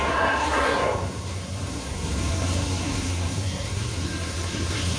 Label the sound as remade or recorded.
remade